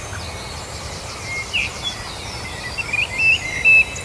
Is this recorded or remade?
recorded